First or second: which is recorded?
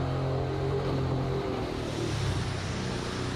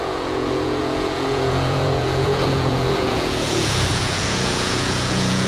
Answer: first